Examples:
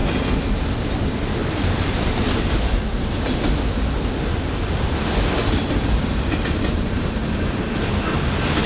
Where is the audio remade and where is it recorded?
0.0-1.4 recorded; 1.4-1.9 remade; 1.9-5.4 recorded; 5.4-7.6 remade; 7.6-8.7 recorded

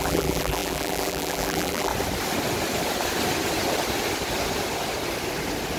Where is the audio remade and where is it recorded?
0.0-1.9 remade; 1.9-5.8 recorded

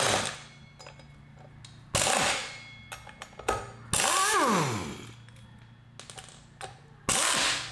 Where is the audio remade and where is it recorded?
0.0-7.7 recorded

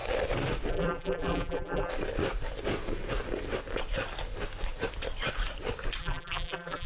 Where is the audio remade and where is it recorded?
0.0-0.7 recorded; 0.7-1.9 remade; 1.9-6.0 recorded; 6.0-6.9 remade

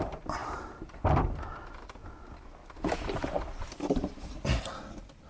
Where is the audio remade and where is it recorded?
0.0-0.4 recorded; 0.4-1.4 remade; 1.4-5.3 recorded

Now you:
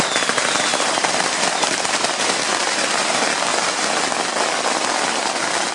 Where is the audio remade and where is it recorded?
0.0-0.7 recorded; 0.7-3.1 remade; 3.1-3.5 recorded; 3.5-4.0 remade; 4.0-5.7 recorded